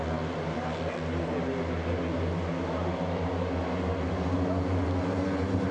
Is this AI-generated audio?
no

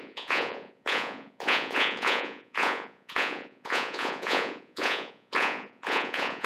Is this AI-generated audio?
yes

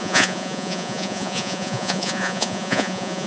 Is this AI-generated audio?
yes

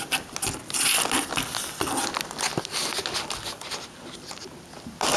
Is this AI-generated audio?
no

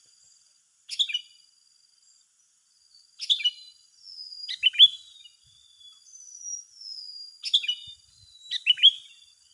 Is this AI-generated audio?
no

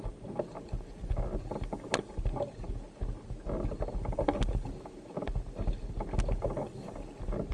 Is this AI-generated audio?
no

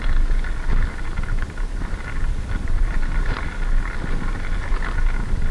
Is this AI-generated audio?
no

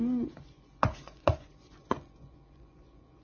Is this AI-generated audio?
yes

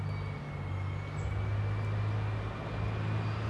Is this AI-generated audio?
no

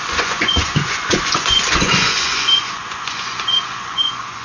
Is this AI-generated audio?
yes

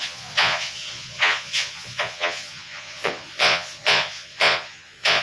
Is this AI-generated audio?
yes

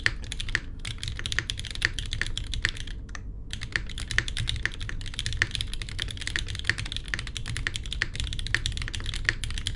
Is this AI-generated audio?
no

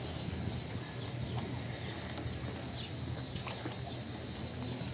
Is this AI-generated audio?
no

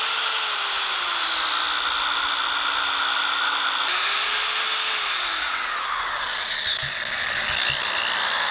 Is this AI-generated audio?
no